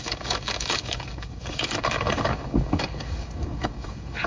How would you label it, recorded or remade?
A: remade